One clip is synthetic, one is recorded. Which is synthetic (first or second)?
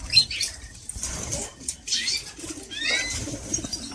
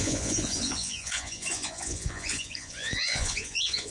second